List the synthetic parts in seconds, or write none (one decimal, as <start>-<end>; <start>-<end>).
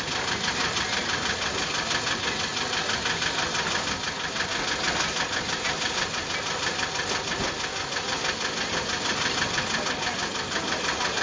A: none